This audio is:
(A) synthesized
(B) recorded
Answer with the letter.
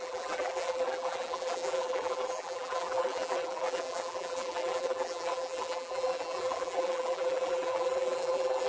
A